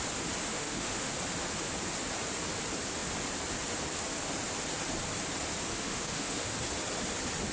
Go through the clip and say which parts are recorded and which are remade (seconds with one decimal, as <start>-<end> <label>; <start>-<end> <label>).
0.0-0.5 recorded; 0.5-1.1 remade; 1.1-5.7 recorded; 5.7-6.6 remade; 6.6-7.5 recorded